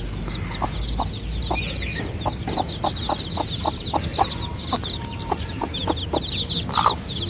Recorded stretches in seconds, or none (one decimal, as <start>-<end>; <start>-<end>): 0.0-7.3